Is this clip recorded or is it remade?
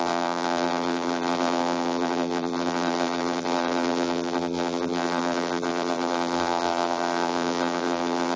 remade